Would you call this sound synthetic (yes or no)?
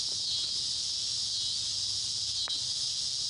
no